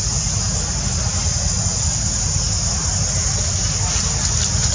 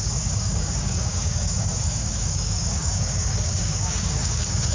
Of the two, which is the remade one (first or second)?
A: second